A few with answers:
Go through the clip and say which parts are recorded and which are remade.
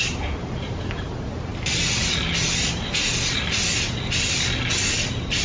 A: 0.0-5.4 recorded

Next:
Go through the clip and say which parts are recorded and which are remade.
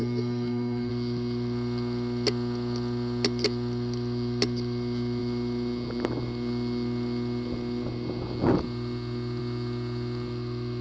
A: 0.0-0.9 remade; 0.9-10.8 recorded